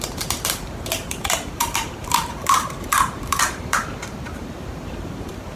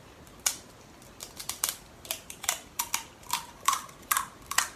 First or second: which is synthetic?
first